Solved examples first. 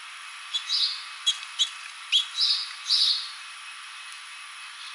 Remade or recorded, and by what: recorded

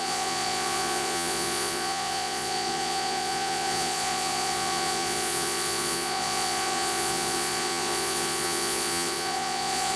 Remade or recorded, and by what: remade, vocoder, Vocos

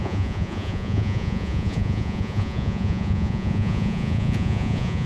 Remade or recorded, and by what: remade, vocoder, Vocos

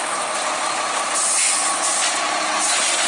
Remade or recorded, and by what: recorded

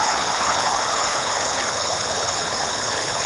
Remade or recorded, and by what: remade, codec, HILCodec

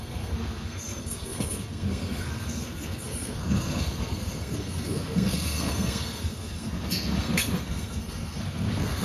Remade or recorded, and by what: remade, codec, SNAC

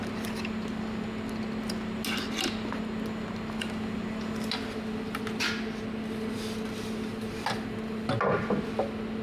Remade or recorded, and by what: recorded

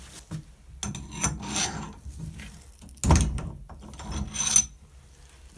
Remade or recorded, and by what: recorded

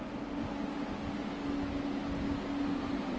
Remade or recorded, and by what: recorded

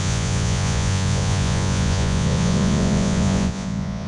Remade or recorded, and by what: remade, vocoder, Vocos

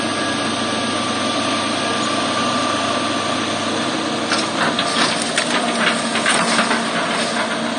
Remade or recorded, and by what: recorded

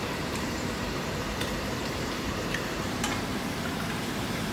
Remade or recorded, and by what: remade, vocoder, BigVGAN v2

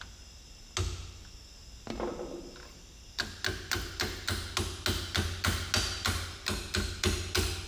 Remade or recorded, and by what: recorded